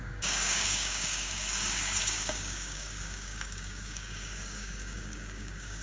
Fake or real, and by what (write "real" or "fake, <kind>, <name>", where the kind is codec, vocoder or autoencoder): fake, codec, DAC